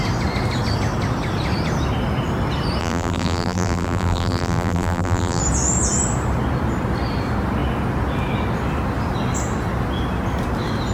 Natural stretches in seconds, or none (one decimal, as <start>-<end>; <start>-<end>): 0.0-2.8; 5.4-10.9